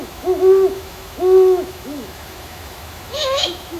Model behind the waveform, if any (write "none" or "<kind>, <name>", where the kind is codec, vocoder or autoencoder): autoencoder, DAC-VAE